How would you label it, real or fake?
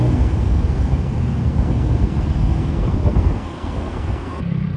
fake